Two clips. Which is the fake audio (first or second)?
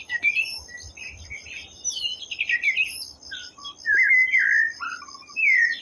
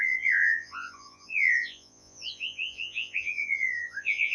second